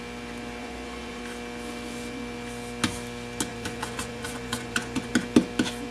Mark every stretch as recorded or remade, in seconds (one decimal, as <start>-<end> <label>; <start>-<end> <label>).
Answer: 0.0-0.6 recorded; 0.6-1.2 remade; 1.2-3.5 recorded; 3.5-5.1 remade; 5.1-5.9 recorded

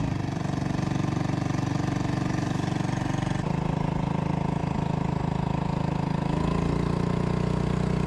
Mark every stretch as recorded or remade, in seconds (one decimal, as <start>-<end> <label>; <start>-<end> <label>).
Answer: 0.0-8.1 recorded

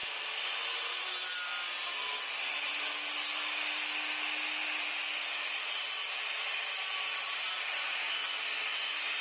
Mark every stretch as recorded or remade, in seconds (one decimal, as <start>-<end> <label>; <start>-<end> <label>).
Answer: 0.0-9.2 recorded